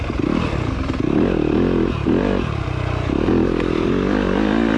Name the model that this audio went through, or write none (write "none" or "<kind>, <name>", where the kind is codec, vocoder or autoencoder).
vocoder, BigVGAN v2